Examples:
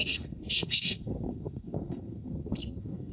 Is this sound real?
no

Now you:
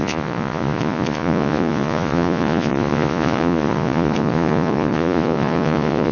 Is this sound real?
no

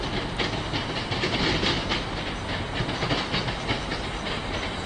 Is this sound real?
yes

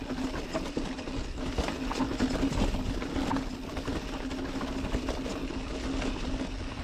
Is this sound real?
yes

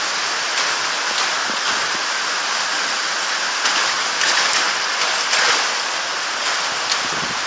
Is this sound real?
yes